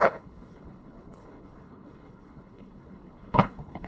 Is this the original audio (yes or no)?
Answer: no